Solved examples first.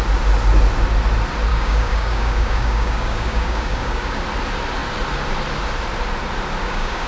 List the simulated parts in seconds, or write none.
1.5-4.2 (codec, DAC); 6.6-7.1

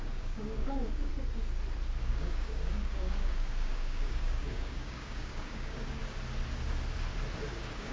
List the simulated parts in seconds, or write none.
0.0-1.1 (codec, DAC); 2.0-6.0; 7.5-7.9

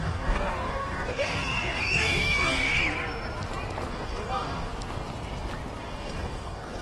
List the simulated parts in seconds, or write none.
0.0-2.8 (codec, DAC); 3.9-4.7; 5.8-6.8